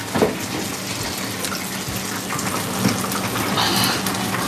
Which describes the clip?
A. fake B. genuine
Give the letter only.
B